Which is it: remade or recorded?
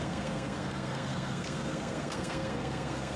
remade